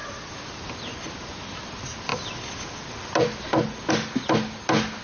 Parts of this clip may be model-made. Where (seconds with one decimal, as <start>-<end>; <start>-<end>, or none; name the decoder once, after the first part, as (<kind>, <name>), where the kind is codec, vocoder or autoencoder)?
none